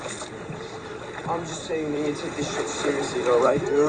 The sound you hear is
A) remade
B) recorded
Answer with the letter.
B